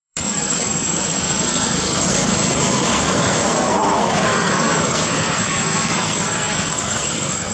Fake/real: fake